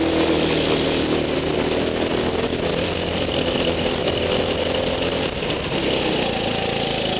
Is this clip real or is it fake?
real